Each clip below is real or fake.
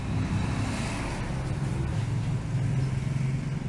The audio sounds real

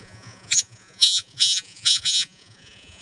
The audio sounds fake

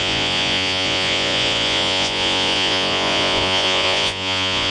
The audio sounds fake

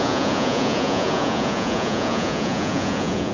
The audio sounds fake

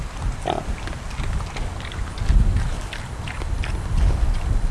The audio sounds real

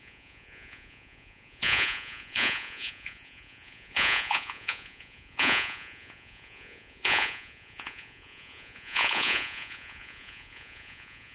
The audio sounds fake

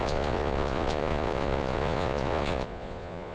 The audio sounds fake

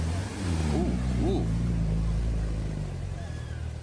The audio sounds real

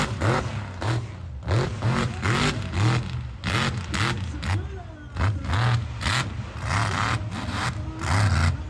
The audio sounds real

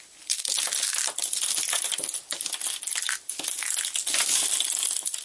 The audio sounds real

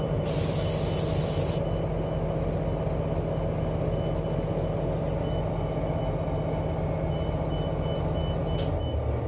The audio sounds real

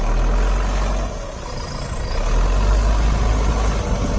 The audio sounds real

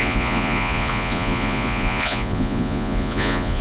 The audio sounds fake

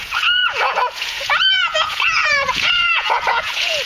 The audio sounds fake